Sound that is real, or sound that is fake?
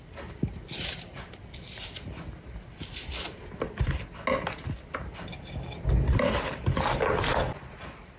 real